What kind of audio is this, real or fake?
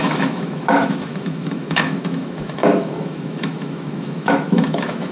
fake